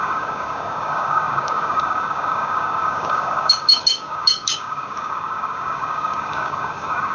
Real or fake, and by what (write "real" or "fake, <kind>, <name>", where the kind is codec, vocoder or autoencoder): fake, codec, DAC